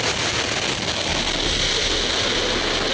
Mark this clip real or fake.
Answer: real